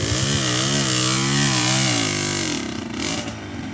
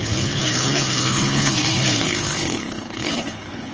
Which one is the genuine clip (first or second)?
first